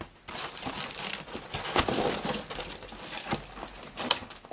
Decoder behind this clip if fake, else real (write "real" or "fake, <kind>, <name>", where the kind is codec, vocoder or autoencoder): real